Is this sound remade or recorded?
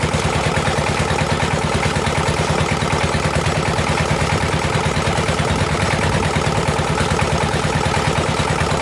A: recorded